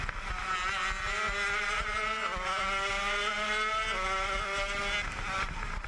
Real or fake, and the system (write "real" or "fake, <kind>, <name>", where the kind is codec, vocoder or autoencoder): real